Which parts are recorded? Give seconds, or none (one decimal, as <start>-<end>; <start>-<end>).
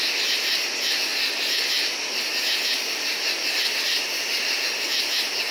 0.0-5.5